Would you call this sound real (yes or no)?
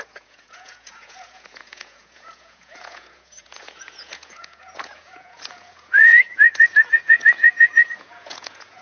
no